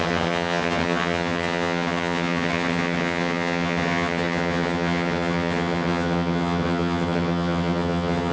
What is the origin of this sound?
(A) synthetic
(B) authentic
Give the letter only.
A